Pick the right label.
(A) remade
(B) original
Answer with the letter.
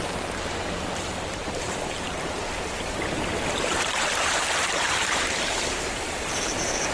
A